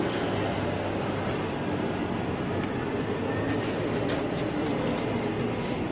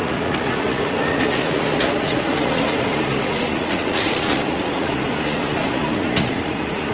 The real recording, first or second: first